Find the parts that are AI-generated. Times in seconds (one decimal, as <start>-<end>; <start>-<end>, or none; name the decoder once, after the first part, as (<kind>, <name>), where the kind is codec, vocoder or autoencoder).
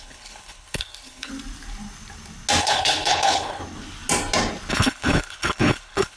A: 0.0-1.3 (codec, HILCodec); 2.6-3.6; 4.7-6.2